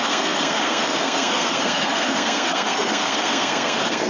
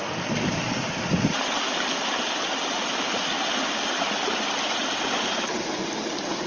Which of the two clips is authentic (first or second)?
second